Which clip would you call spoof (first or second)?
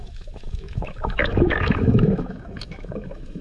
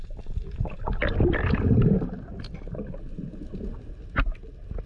first